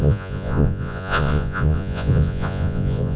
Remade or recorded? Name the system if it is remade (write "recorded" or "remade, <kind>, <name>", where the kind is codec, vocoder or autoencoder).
remade, vocoder, Vocos